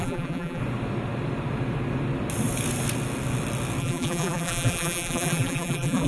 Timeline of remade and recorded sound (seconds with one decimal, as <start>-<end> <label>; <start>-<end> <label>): 0.0-0.6 remade; 0.6-3.8 recorded; 3.8-6.1 remade